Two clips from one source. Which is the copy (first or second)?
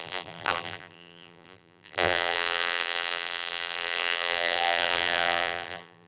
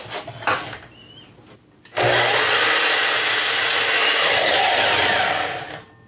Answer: first